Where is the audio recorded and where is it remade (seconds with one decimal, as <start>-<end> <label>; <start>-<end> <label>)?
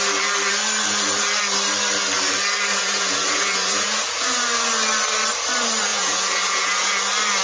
0.0-2.7 recorded; 2.7-4.4 remade; 4.4-5.9 recorded; 5.9-7.0 remade; 7.0-7.4 recorded